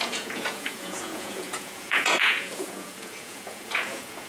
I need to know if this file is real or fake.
fake